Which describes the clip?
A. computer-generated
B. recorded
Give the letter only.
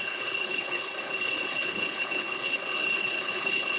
A